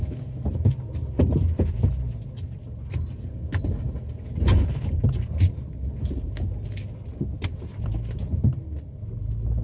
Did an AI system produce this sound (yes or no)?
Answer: no